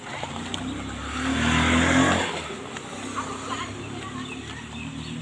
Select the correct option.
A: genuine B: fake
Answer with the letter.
A